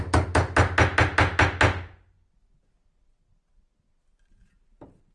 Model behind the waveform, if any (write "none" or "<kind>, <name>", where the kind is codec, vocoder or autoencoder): none